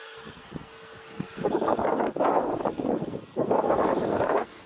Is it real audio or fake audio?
fake